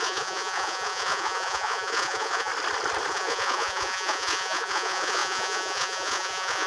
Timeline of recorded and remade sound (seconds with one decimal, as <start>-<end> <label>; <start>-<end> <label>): 0.0-2.5 remade; 2.5-3.1 recorded; 3.1-6.7 remade